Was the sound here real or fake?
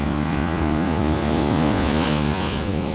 fake